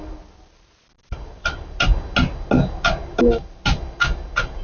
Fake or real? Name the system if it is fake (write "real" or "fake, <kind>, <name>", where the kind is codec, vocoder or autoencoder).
real